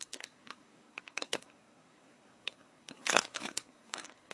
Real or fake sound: fake